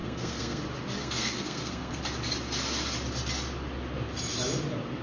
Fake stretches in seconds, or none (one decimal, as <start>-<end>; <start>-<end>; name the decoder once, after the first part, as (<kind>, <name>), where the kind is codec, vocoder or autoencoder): 0.0-0.6 (codec, SNAC); 1.0-2.0